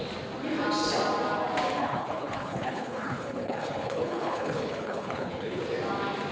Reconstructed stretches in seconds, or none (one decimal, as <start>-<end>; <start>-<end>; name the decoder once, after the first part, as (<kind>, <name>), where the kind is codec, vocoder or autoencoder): 1.8-5.6 (codec, HILCodec)

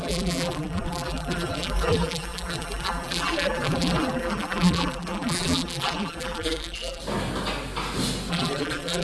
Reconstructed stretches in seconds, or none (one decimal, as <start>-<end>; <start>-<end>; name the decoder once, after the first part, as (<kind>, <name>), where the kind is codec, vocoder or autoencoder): 0.0-7.0 (vocoder, BigVGAN v2); 8.3-9.0

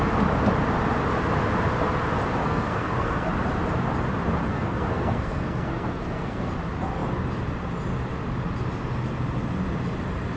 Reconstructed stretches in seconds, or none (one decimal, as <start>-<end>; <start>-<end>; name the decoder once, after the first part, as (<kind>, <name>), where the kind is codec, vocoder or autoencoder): 2.4-3.3 (codec, SNAC); 4.5-6.5

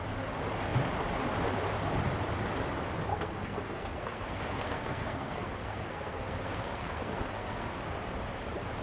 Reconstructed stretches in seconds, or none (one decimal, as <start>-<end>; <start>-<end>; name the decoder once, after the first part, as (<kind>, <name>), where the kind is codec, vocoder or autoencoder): 3.1-7.8 (codec, SNAC)

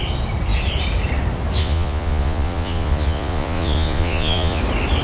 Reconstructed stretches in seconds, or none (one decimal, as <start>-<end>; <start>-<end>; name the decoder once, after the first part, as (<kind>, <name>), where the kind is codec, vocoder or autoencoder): 1.6-4.6 (vocoder, Vocos)

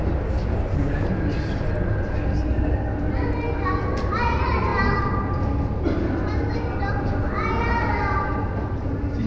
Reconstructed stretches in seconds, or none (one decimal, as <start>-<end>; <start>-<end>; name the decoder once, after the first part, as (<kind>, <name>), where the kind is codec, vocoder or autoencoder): none

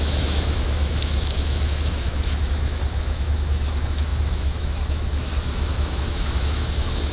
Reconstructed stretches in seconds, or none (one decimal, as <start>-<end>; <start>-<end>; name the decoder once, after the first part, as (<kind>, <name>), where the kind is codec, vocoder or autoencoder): 0.0-7.1 (autoencoder, DAC-VAE)

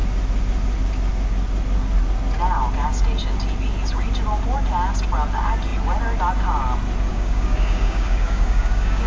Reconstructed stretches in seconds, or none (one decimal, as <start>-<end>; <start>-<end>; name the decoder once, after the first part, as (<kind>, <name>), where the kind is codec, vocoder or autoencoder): 7.1-9.1 (codec, DAC)